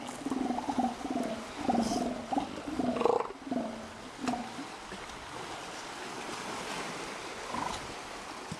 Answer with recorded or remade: recorded